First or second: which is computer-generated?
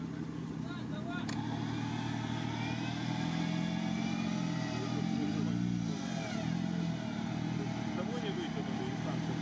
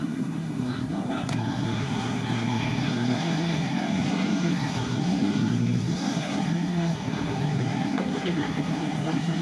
second